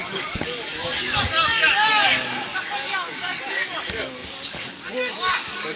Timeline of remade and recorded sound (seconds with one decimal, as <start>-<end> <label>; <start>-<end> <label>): 0.0-5.8 remade